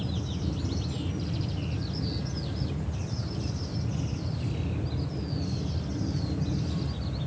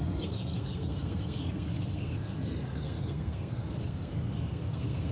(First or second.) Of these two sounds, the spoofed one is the second